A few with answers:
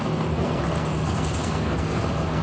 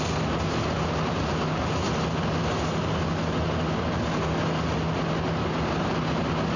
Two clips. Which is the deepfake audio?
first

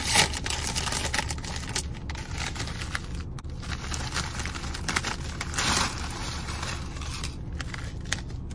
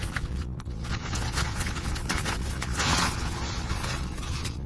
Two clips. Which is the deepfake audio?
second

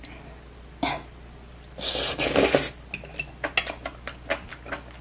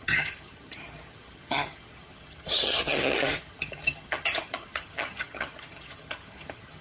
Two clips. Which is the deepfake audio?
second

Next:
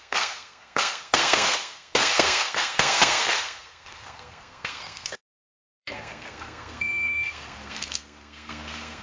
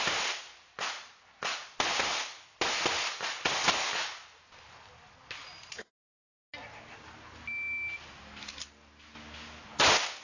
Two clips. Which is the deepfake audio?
first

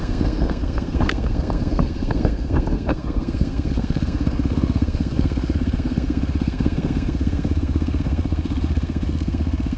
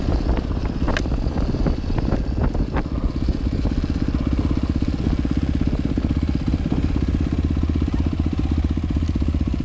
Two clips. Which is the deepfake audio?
first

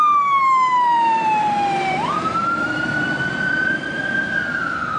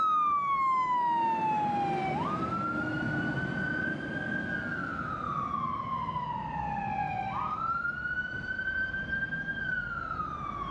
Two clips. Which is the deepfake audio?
first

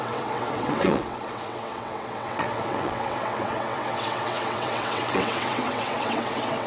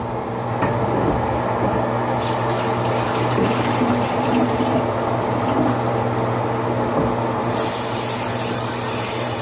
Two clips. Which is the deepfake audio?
first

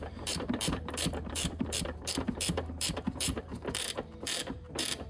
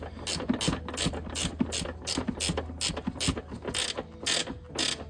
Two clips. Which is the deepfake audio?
first